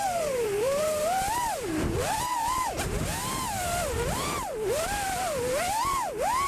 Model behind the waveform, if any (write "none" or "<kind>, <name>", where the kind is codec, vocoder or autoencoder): vocoder, BigVGAN v2